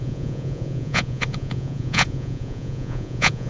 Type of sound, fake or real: fake